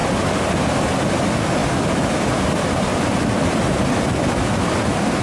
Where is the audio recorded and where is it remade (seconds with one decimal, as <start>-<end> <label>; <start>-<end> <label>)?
0.0-1.0 recorded; 1.0-1.6 remade; 1.6-4.1 recorded; 4.1-5.2 remade